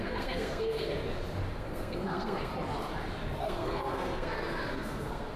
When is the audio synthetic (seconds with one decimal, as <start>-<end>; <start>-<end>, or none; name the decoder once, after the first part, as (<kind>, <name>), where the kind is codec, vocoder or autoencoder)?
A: 0.0-0.9 (codec, SNAC); 1.5-2.5; 3.4-5.4